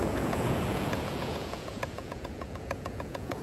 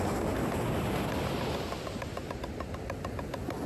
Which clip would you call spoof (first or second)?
first